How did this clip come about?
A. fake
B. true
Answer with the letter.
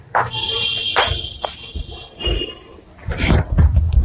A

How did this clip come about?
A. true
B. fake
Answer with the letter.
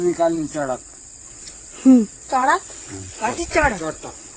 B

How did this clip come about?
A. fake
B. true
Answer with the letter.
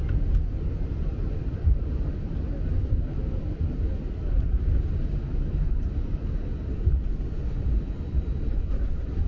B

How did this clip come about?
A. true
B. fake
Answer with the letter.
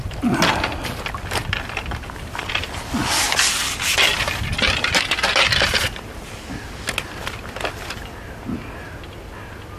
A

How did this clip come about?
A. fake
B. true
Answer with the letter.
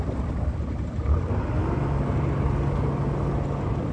B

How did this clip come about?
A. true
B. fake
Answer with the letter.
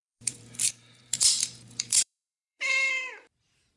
B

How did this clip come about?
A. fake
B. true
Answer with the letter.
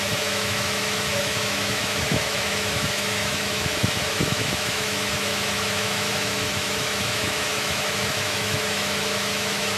A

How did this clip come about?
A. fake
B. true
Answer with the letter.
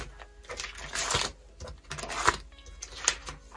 B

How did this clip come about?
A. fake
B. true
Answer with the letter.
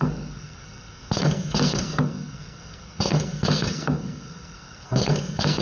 A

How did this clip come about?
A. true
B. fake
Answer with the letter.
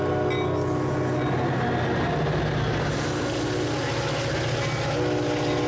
A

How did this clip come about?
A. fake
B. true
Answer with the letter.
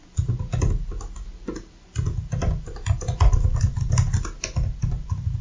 B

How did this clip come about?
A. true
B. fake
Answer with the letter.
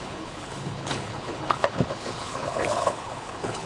B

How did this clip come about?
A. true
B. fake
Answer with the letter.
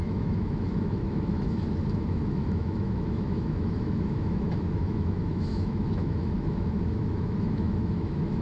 B